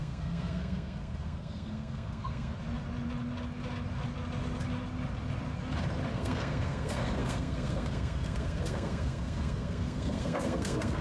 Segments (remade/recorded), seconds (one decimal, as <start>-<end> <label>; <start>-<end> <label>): 0.0-2.6 remade; 2.6-6.1 recorded; 6.1-11.0 remade

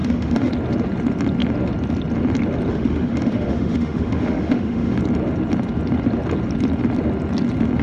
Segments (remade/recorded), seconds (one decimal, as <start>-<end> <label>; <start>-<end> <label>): 0.0-0.5 remade; 0.5-2.7 recorded; 2.7-5.0 remade; 5.0-7.8 recorded

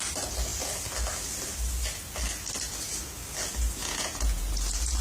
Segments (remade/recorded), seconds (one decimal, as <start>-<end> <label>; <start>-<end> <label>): 0.0-3.8 recorded; 3.8-4.5 remade; 4.5-5.0 recorded

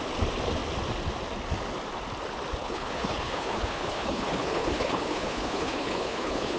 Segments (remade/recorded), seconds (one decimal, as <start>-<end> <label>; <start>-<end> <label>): 0.0-2.6 recorded; 2.6-6.6 remade